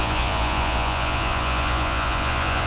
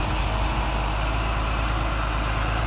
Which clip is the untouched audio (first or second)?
second